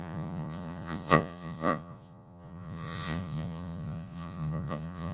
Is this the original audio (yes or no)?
no